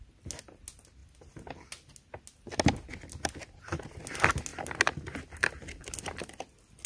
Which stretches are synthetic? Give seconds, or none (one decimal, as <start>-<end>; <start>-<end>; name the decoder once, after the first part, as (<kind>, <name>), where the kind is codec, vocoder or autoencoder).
none